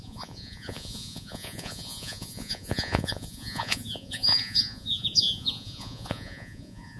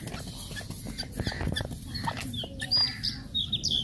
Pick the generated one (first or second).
first